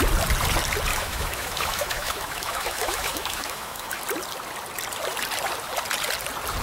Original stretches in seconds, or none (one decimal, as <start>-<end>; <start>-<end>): 0.0-0.9; 4.0-6.6